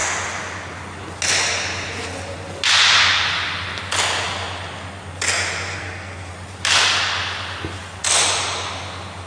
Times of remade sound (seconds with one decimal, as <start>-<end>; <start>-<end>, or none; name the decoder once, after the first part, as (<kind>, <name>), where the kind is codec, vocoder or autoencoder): 5.7-6.3 (codec, SNAC)